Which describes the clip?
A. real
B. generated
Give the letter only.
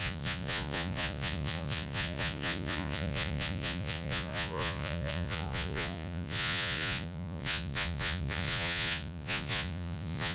B